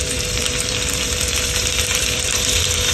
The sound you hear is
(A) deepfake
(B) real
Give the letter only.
A